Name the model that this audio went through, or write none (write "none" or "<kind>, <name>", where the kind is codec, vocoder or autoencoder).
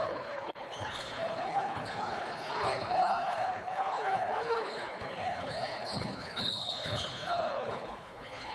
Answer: codec, HILCodec